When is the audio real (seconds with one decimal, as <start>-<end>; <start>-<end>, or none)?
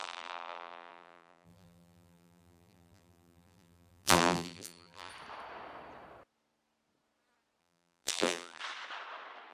5.1-7.6; 8.6-9.5